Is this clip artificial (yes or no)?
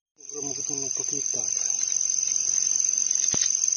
no